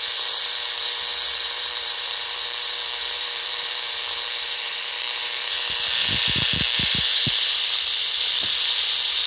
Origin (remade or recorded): remade